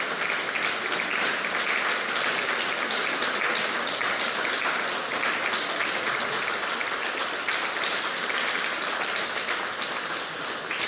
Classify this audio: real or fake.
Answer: real